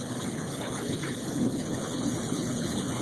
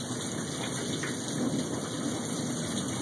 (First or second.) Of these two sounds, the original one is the second